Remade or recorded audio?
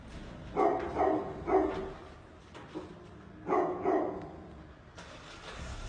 recorded